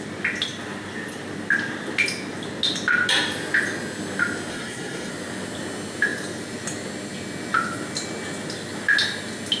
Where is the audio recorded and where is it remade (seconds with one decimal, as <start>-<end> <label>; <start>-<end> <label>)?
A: 0.0-4.5 recorded; 4.5-5.1 remade; 5.1-9.6 recorded